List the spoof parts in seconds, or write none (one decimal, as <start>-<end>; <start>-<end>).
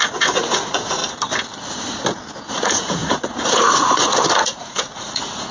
0.0-1.0; 2.5-5.5